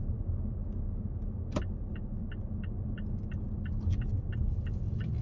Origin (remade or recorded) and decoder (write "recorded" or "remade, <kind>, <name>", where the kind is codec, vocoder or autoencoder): recorded